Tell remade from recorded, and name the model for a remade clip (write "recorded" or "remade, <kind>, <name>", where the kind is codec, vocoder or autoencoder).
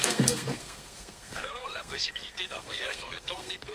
remade, codec, SNAC